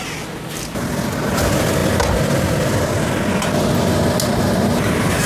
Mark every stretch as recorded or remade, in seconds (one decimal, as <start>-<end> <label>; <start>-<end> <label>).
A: 0.0-5.3 recorded